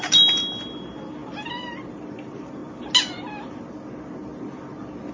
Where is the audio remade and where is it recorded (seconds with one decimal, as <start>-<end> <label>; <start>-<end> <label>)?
0.0-5.1 recorded